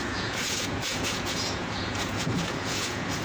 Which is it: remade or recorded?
remade